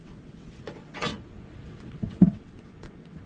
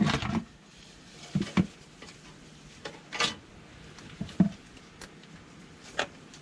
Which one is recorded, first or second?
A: second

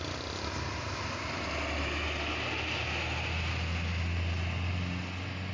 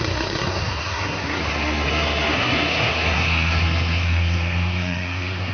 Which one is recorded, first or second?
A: first